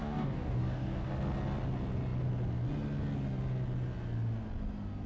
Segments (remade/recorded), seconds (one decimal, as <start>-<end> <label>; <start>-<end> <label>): 0.0-1.1 remade; 1.1-5.1 recorded